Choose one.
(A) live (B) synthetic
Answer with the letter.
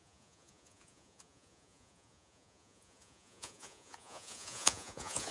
B